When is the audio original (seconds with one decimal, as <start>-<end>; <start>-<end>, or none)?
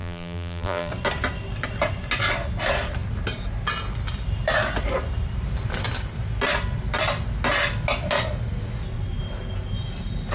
0.9-10.3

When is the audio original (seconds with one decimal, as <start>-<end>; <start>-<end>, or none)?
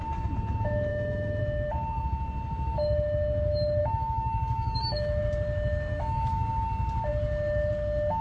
0.0-0.9; 1.4-3.8; 5.2-5.9; 6.5-8.2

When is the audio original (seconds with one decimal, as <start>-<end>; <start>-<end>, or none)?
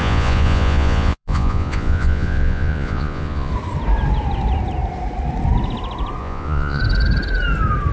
3.5-6.2; 6.8-7.9